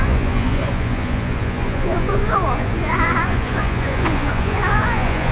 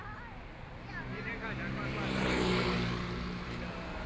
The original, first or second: second